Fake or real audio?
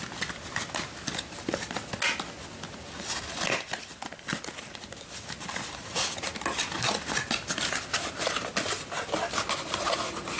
real